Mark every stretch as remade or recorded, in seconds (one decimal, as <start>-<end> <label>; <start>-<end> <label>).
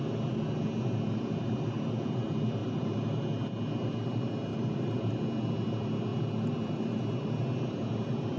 0.0-2.6 recorded; 2.6-3.2 remade; 3.2-4.5 recorded; 4.5-5.0 remade; 5.0-8.4 recorded